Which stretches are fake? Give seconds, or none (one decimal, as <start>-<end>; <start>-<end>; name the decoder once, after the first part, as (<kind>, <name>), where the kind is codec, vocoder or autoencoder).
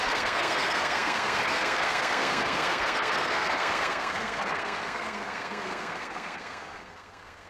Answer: 0.0-7.5 (codec, SNAC)